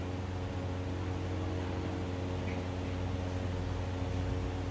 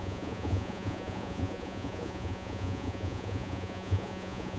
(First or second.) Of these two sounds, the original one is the first